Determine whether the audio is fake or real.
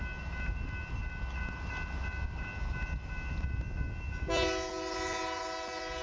real